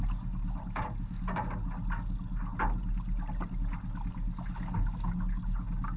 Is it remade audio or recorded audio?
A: recorded